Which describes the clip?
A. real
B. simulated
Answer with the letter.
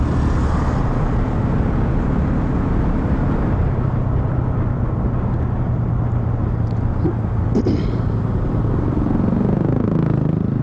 A